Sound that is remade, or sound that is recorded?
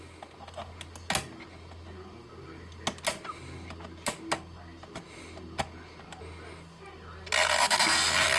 recorded